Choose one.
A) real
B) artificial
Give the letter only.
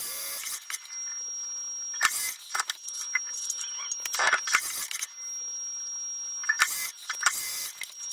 A